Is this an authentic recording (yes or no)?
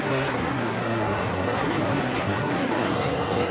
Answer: no